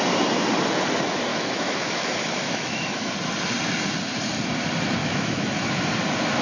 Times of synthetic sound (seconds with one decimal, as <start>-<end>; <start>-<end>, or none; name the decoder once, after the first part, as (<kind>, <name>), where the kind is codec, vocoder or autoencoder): 1.3-3.1 (autoencoder, DAC-VAE); 5.0-5.8